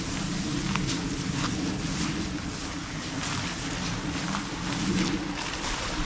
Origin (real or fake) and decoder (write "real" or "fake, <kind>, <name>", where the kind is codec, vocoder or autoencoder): real